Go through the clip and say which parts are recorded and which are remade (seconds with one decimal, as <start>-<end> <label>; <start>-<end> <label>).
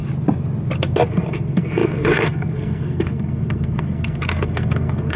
0.0-1.1 recorded; 1.1-5.2 remade